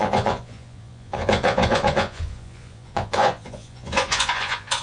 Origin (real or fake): fake